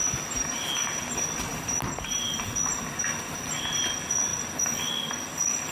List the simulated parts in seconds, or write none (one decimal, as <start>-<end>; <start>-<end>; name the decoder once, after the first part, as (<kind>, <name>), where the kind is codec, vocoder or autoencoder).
none